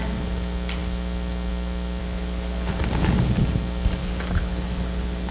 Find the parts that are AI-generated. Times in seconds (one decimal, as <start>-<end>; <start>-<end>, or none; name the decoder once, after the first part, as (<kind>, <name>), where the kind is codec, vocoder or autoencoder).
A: 2.0-2.8 (codec, HILCodec); 4.0-5.3